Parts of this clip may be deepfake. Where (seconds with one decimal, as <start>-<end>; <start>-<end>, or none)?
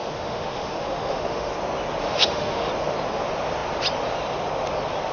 0.0-1.5; 2.0-2.7